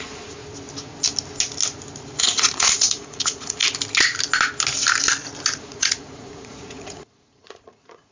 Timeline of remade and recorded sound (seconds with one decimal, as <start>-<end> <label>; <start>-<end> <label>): 0.0-0.4 remade; 0.4-2.2 recorded; 2.2-3.6 remade; 3.6-5.6 recorded; 5.6-8.1 remade